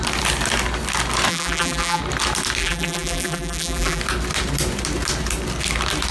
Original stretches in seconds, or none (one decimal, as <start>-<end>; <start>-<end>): 0.0-1.3; 2.0-2.6; 4.0-6.1